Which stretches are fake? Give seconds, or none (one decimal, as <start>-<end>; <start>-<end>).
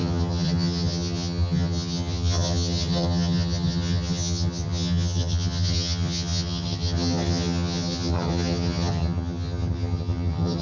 0.0-10.6